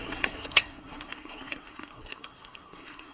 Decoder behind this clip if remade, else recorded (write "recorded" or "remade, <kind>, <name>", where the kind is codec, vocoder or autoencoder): remade, codec, SNAC